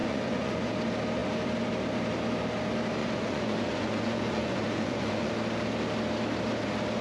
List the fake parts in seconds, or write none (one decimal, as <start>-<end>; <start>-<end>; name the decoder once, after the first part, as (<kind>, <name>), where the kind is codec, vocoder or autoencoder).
0.0-0.7 (vocoder, Vocos); 3.0-5.3